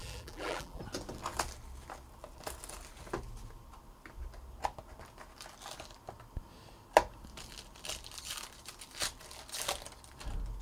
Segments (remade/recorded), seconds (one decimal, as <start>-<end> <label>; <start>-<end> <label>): 0.0-0.8 remade; 0.8-10.6 recorded